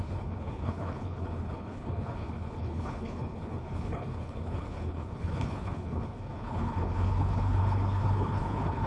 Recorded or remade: remade